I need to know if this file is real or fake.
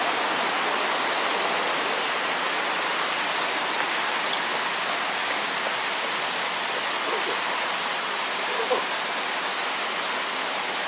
real